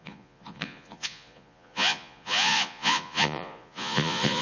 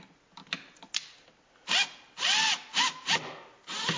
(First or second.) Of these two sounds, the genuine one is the second